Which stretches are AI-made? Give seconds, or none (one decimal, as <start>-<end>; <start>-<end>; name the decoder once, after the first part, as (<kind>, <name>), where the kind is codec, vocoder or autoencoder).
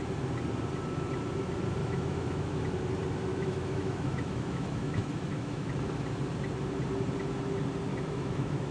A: 1.8-2.6 (autoencoder, DAC-VAE); 3.3-5.7; 7.9-8.7